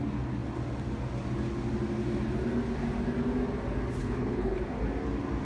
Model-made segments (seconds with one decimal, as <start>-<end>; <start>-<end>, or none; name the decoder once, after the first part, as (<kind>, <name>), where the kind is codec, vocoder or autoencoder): 4.0-4.6 (codec, HILCodec)